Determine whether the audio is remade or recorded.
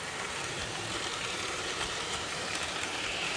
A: remade